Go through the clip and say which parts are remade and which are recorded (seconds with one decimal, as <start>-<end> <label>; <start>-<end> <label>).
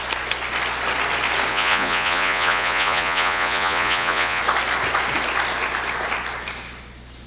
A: 0.0-1.5 recorded; 1.5-4.4 remade; 4.4-7.3 recorded